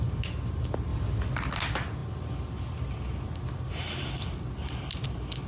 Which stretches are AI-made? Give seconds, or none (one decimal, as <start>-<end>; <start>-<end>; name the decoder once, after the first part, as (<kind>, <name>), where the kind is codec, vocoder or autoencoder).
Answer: none